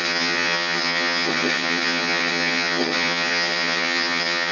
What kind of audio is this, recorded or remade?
remade